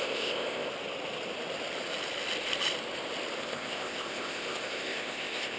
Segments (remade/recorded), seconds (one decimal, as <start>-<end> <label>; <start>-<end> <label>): 0.0-0.7 remade; 0.7-3.4 recorded; 3.4-5.6 remade